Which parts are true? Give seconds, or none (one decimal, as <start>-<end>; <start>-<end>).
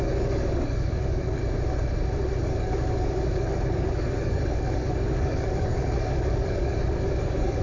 1.4-2.4